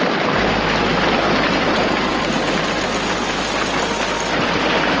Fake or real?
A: real